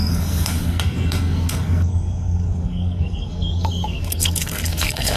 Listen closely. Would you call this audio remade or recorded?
remade